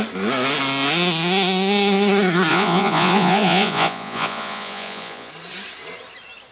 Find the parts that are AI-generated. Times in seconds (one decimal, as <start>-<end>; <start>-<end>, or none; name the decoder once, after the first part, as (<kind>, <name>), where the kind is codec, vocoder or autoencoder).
2.5-5.3 (vocoder, Vocos)

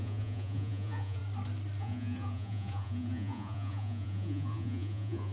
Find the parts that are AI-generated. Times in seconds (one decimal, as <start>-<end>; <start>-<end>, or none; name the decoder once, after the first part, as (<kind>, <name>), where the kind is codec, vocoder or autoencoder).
0.0-1.2 (vocoder, Vocos); 1.8-5.3